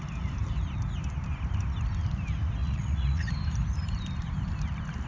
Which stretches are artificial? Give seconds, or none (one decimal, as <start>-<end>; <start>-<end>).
2.6-3.3